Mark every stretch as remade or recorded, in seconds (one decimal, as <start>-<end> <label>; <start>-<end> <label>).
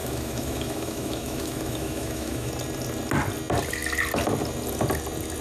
0.0-2.5 remade; 2.5-5.4 recorded